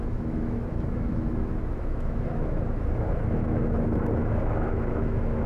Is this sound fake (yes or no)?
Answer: yes